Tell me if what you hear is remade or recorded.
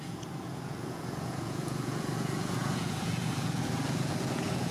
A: remade